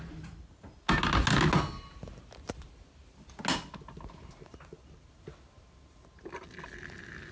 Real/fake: real